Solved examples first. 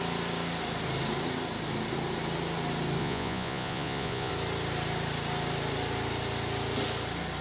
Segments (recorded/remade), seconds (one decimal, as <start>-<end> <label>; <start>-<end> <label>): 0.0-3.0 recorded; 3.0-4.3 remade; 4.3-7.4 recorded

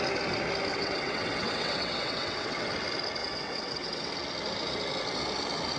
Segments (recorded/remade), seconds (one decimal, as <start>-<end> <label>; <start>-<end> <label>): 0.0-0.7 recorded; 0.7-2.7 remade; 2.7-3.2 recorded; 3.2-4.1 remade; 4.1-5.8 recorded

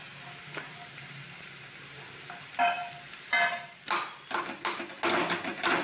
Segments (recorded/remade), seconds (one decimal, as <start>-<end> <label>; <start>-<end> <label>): 0.0-5.8 recorded

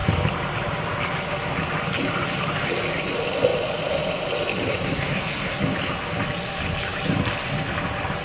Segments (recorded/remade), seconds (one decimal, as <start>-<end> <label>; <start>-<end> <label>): 0.0-4.8 recorded; 4.8-5.6 remade; 5.6-8.2 recorded